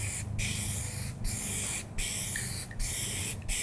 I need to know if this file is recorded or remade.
recorded